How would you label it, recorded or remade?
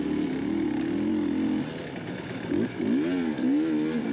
recorded